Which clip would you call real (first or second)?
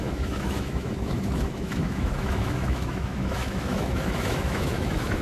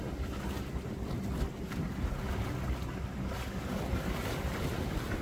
second